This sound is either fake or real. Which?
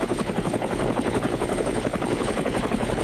fake